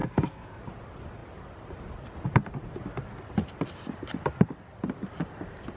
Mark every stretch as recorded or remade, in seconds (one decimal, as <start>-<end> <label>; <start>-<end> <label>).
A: 0.0-0.6 remade; 0.6-5.8 recorded